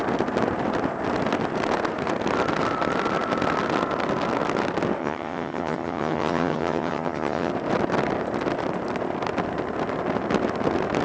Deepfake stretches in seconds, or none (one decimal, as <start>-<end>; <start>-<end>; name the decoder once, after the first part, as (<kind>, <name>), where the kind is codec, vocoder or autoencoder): 5.0-7.5 (vocoder, HiFi-GAN)

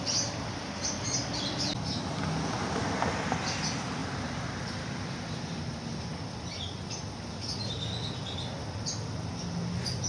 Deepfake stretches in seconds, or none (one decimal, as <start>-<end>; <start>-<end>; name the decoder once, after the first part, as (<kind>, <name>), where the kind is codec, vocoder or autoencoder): none

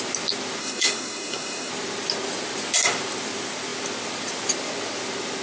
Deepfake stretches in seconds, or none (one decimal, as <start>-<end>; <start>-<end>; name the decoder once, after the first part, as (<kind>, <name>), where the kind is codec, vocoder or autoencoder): 0.6-1.7 (codec, SNAC)